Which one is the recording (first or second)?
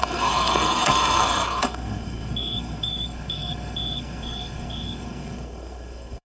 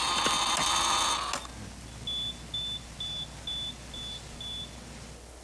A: second